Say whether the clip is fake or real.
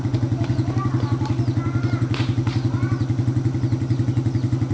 real